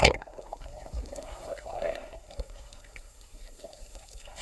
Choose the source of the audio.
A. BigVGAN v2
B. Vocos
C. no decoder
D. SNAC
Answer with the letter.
D